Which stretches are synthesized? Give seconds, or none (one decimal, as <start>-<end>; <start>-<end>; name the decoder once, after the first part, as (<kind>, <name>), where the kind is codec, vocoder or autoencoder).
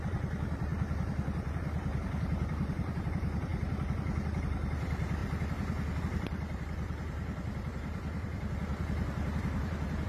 0.0-3.5 (vocoder, BigVGAN v2); 4.4-10.1